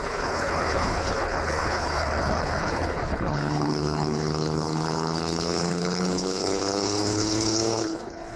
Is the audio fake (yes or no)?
yes